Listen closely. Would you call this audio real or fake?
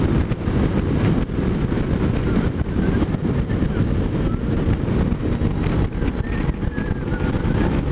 real